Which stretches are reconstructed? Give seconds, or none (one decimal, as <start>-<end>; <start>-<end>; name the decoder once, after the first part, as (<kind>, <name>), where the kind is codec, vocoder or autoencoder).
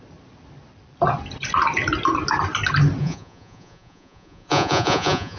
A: 3.0-5.4 (vocoder, Vocos)